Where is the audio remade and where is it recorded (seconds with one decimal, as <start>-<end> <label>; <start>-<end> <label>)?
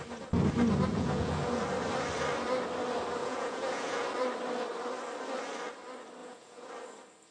0.0-0.9 recorded; 0.9-1.6 remade; 1.6-3.2 recorded; 3.2-4.0 remade; 4.0-6.2 recorded; 6.2-6.7 remade; 6.7-7.3 recorded